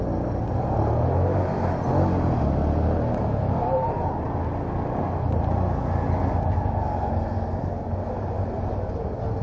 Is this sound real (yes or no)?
yes